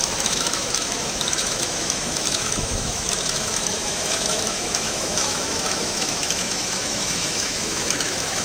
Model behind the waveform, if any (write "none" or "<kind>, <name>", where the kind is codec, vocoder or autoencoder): autoencoder, DAC-VAE